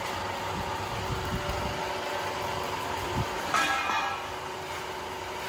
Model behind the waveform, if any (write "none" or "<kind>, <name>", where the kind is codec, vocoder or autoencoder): none